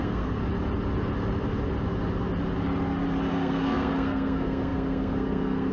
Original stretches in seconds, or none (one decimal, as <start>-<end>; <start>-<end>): 0.4-3.3